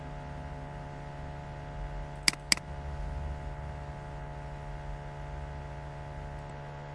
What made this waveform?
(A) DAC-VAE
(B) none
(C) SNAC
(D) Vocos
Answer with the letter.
B